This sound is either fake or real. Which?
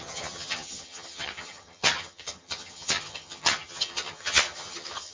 fake